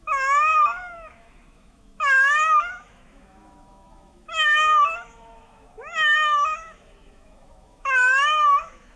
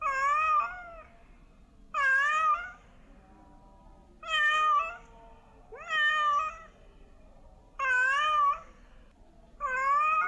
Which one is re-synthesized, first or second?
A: first